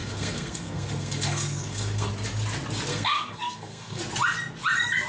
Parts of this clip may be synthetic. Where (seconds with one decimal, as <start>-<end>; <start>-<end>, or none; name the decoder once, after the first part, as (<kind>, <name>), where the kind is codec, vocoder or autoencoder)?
0.0-2.1 (codec, SNAC); 2.9-4.0